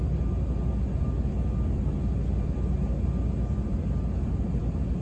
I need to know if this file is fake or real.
real